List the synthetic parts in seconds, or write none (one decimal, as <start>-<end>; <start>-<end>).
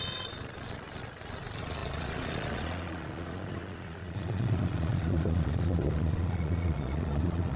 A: 0.0-7.6